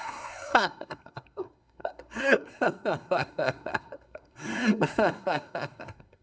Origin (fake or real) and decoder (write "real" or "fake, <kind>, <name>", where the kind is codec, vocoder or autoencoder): fake, codec, SNAC